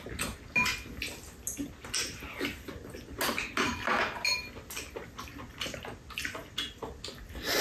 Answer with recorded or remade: recorded